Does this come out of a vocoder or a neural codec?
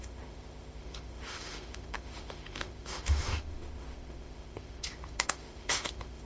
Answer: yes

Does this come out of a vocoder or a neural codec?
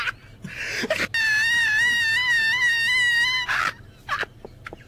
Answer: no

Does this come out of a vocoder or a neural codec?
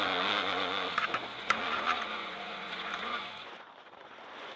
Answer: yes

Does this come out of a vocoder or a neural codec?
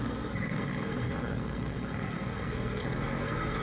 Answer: yes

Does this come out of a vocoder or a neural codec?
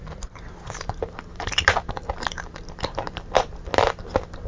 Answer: no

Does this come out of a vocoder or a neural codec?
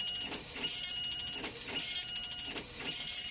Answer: no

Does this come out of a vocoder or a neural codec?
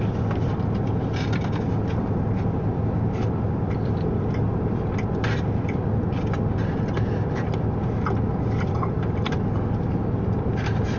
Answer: yes